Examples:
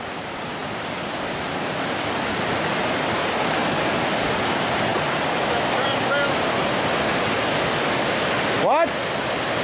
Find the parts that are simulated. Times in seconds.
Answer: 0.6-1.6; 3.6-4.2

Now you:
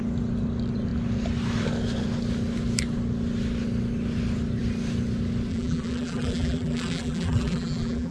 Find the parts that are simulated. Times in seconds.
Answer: 5.5-8.1

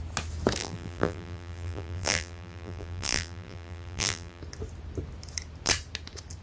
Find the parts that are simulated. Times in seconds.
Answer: 0.6-4.4

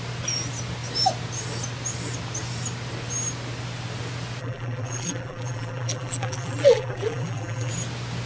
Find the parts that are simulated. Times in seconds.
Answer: 4.4-7.7

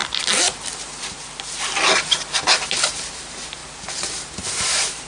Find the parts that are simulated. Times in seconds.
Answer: 3.1-3.6; 4.3-5.1

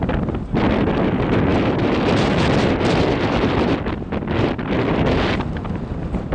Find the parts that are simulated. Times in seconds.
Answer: none

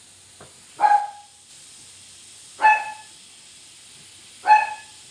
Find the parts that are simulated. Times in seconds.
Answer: 1.0-1.5

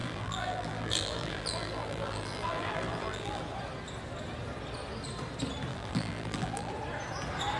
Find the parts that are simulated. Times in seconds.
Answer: 0.0-3.4; 5.7-6.7